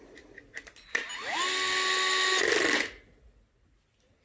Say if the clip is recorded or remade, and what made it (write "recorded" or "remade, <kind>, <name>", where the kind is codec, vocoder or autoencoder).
recorded